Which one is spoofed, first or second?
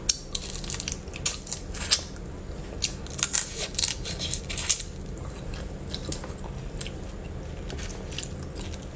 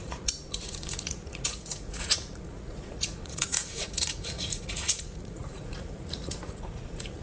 second